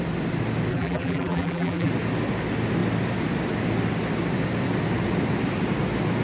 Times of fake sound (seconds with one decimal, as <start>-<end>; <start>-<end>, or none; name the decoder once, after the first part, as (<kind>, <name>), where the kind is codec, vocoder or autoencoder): 0.7-1.9 (vocoder, BigVGAN v2)